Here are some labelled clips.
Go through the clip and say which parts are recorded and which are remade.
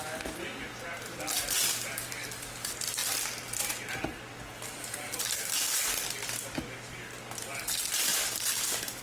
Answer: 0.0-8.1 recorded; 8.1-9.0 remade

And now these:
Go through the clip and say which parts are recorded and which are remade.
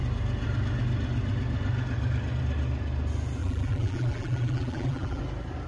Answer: 0.0-3.4 recorded; 3.4-5.2 remade; 5.2-5.7 recorded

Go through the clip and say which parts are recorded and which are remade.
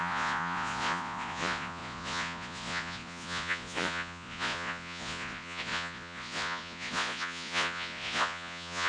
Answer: 0.0-8.9 remade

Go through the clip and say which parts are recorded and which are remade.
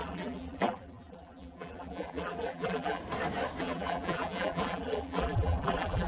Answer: 0.0-3.0 remade; 3.0-3.6 recorded; 3.6-6.1 remade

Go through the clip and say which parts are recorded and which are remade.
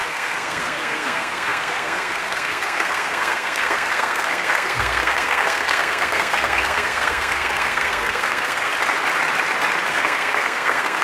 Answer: 0.0-8.7 remade; 8.7-9.9 recorded; 9.9-11.0 remade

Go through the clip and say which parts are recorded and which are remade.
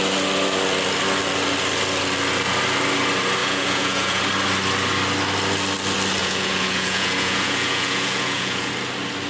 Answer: 0.0-3.4 recorded; 3.4-4.2 remade; 4.2-6.2 recorded; 6.2-8.7 remade; 8.7-9.3 recorded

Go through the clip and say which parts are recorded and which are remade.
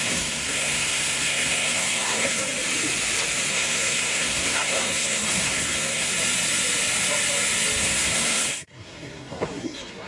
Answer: 0.0-2.4 remade; 2.4-3.5 recorded; 3.5-6.1 remade; 6.1-7.8 recorded; 7.8-10.1 remade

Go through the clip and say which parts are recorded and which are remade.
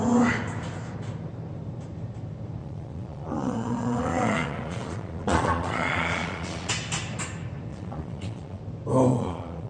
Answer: 0.0-2.6 recorded; 2.6-6.7 remade; 6.7-7.7 recorded; 7.7-8.6 remade; 8.6-9.1 recorded; 9.1-9.7 remade